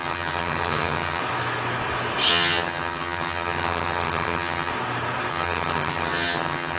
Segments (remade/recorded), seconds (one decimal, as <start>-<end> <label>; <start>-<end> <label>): 0.0-1.2 remade; 1.2-2.3 recorded; 2.3-4.7 remade; 4.7-5.3 recorded; 5.3-6.8 remade